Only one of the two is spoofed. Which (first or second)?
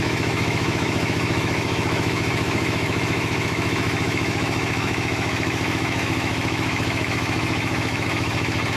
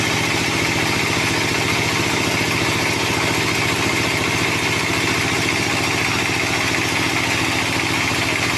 first